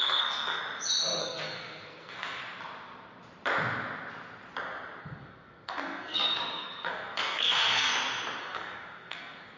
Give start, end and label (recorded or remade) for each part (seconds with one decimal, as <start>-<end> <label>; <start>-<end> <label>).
0.0-0.6 remade; 0.6-1.2 recorded; 1.2-2.4 remade; 2.4-5.0 recorded; 5.0-7.9 remade; 7.9-8.4 recorded; 8.4-9.6 remade